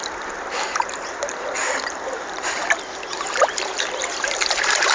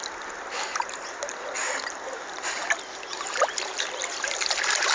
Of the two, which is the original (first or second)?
second